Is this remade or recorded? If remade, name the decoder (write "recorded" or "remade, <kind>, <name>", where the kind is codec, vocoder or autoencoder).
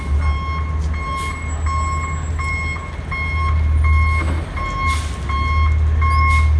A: recorded